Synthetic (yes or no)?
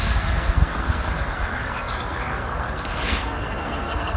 yes